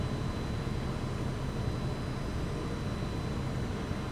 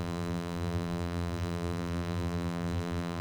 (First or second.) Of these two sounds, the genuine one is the first